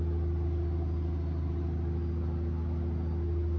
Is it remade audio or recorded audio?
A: recorded